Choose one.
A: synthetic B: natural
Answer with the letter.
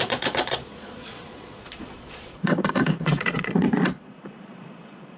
A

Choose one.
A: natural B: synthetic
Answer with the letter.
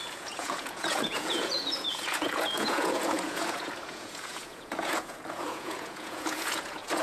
B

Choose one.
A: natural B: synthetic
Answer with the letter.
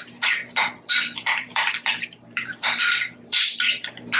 B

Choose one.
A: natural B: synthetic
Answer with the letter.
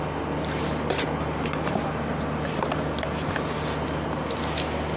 A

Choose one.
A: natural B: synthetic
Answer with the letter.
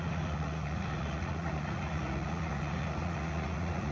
B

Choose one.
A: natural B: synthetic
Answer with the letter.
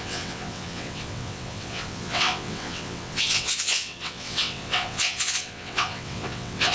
B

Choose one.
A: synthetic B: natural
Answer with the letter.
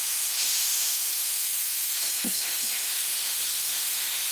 A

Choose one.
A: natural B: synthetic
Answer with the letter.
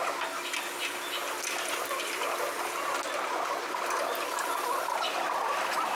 A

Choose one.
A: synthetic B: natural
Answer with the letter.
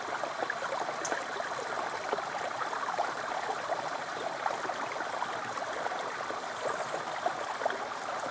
B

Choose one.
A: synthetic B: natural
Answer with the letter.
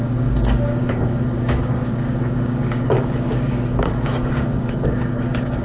A